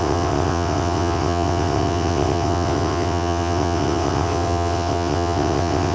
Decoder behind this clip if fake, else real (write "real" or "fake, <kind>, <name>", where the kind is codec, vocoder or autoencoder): fake, vocoder, WaveNeXt